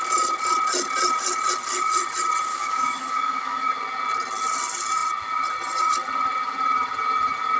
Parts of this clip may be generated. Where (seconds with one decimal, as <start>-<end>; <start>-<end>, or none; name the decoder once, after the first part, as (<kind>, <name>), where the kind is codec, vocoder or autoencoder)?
2.5-3.7 (autoencoder, DAC-VAE)